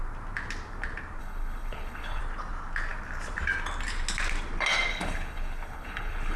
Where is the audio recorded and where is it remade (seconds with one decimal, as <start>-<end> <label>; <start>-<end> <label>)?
0.0-1.2 recorded; 1.2-2.2 remade; 2.2-4.9 recorded; 4.9-6.4 remade